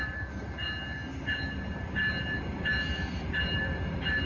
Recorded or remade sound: recorded